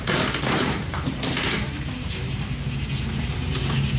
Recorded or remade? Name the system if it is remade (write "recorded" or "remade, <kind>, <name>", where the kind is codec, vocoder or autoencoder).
remade, vocoder, BigVGAN v2